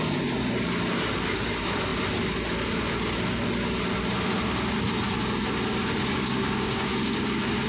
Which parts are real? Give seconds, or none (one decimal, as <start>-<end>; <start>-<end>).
0.0-6.1